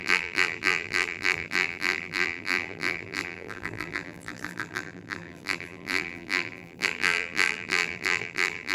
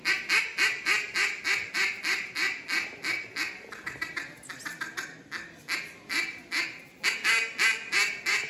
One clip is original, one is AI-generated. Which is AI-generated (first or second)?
first